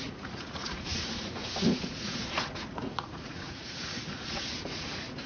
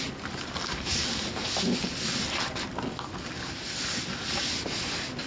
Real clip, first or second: second